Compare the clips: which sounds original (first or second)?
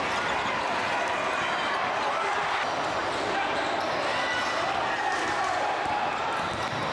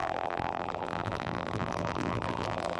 first